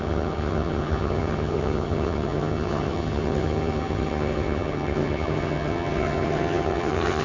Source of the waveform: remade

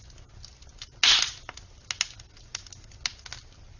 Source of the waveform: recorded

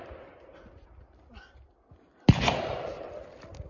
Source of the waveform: recorded